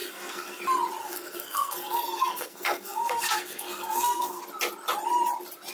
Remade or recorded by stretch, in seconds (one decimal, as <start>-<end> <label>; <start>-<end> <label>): 0.0-0.6 remade; 0.6-1.0 recorded; 1.0-4.4 remade; 4.4-5.7 recorded